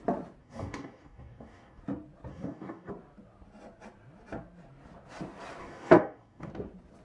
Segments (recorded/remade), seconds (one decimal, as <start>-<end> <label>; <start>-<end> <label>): 0.0-0.4 recorded; 0.4-1.8 remade; 1.8-2.3 recorded; 2.3-2.9 remade; 2.9-5.6 recorded; 5.6-6.5 remade; 6.5-7.0 recorded